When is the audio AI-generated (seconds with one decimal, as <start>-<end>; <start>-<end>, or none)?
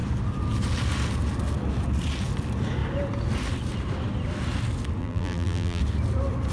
5.0-5.8